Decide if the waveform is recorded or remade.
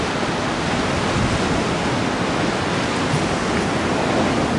recorded